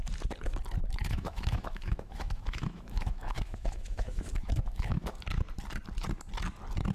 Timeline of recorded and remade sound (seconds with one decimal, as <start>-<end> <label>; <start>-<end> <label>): 0.0-1.0 recorded; 1.0-5.1 remade; 5.1-6.9 recorded